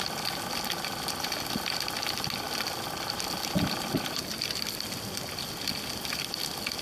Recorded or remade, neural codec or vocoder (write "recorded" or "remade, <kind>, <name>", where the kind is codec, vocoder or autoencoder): recorded